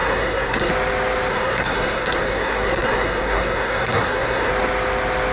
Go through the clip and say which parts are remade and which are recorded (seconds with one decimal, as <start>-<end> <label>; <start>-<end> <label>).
0.0-0.7 remade; 0.7-1.3 recorded; 1.3-4.5 remade; 4.5-5.3 recorded